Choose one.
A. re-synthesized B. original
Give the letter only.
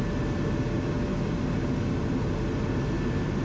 B